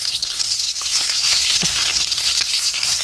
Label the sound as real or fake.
fake